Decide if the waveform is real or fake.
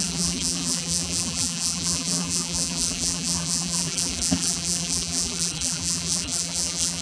fake